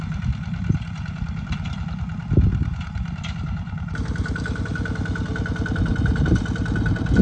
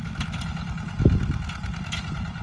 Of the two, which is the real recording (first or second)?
second